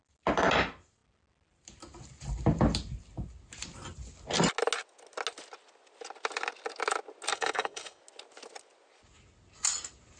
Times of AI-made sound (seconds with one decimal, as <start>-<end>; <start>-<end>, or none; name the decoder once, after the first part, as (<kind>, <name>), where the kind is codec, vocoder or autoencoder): 7.3-8.0 (codec, DAC)